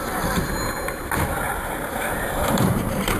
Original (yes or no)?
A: no